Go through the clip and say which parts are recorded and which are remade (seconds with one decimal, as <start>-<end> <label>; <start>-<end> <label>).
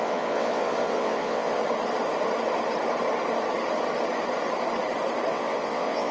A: 0.0-1.6 remade; 1.6-5.3 recorded; 5.3-6.1 remade